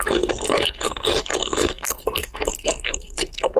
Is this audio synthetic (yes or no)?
yes